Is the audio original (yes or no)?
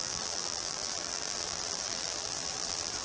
no